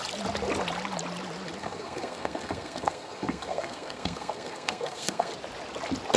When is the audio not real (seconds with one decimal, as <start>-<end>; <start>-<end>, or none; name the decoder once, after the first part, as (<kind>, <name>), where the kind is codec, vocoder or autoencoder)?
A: 1.6-5.3 (codec, SNAC)